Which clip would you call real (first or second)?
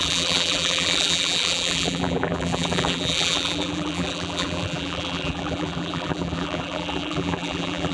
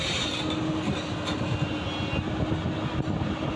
second